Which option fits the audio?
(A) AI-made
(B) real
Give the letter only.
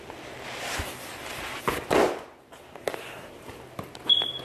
B